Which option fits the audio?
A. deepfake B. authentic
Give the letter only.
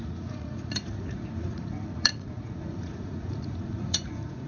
A